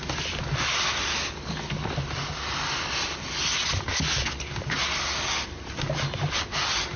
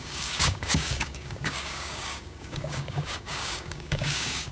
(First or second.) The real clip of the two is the first